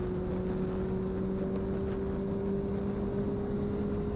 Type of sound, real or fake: real